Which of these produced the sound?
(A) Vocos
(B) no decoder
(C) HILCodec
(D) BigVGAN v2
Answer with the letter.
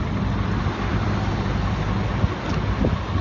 B